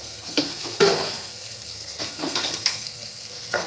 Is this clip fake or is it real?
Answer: fake